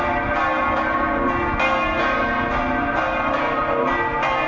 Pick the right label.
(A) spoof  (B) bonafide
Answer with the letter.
B